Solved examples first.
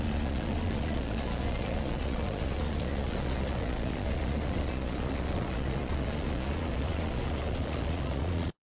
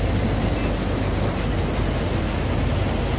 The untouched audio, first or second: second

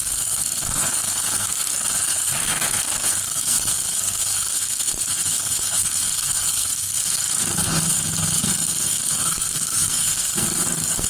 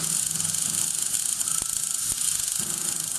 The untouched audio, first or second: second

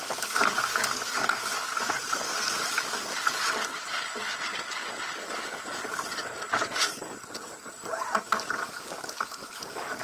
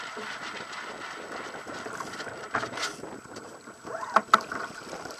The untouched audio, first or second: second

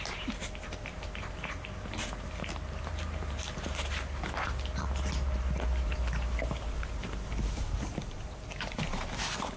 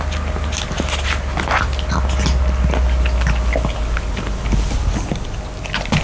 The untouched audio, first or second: second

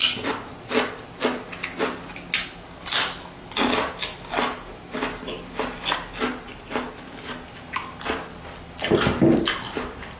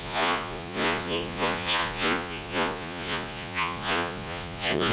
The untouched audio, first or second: first